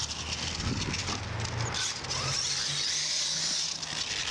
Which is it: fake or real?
real